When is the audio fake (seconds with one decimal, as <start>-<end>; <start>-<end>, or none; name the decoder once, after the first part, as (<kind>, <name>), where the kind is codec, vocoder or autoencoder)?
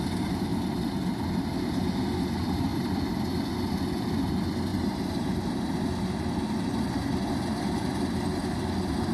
4.7-5.3 (vocoder, BigVGAN v2)